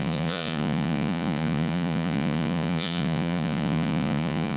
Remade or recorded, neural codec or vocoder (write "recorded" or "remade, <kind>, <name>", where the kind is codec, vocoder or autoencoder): remade, vocoder, Vocos